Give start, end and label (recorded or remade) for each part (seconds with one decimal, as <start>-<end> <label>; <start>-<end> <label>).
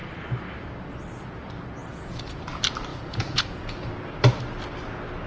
0.0-1.8 recorded; 1.8-2.5 remade; 2.5-2.9 recorded; 2.9-3.9 remade; 3.9-5.3 recorded